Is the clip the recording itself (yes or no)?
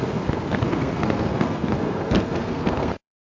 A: no